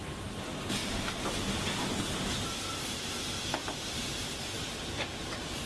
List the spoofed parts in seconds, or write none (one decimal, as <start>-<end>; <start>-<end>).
0.8-1.3; 3.6-4.5